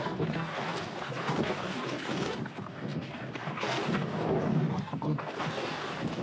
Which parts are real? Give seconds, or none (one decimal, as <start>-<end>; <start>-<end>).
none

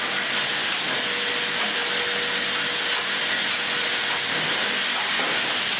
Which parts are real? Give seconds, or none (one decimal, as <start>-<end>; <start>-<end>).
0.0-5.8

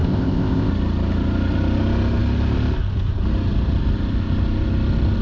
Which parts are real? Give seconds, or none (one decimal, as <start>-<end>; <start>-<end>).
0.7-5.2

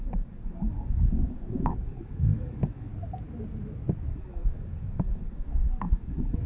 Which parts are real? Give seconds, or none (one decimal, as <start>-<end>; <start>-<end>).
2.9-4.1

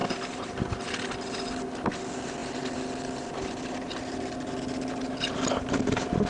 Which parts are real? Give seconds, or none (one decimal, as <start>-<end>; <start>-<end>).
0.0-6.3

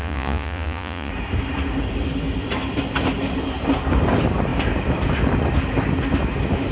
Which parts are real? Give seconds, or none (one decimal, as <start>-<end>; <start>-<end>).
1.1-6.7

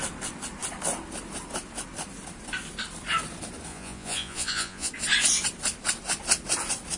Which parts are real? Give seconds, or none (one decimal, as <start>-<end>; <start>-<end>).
0.0-3.7; 4.9-7.0